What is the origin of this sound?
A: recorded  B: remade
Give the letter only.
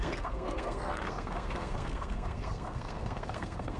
B